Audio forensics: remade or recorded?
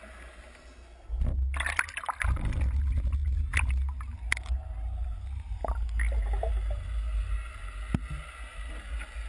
recorded